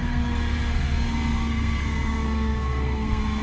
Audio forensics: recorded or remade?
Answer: remade